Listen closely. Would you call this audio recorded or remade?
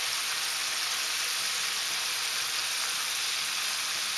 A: recorded